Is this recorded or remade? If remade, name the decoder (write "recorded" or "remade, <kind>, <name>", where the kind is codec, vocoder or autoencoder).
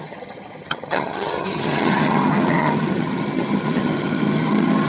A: remade, vocoder, HiFi-GAN